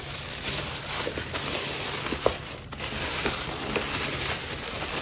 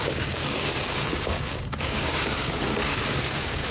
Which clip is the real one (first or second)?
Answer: first